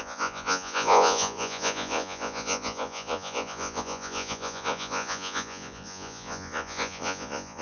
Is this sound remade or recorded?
remade